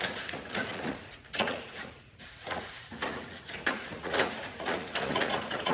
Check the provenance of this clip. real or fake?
fake